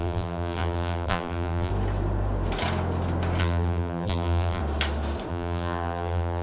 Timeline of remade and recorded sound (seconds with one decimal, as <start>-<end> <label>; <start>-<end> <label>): 0.0-1.7 remade; 1.7-3.4 recorded; 3.4-4.6 remade; 4.6-5.3 recorded; 5.3-6.4 remade